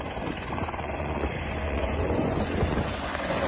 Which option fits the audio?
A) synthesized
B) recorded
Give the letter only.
A